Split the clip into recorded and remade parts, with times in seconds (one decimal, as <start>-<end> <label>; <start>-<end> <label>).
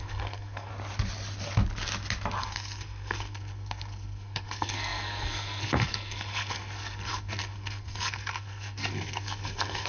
0.0-0.7 remade; 0.7-2.4 recorded; 2.4-9.9 remade